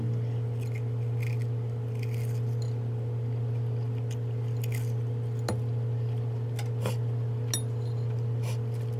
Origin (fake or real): real